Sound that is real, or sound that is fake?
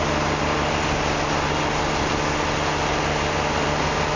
real